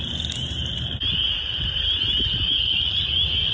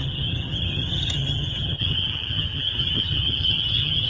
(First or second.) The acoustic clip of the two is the first